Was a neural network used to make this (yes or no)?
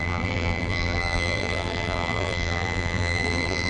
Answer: yes